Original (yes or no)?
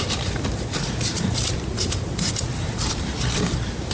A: no